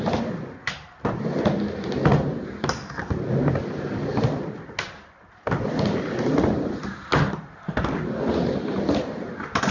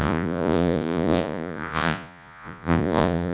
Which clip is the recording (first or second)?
first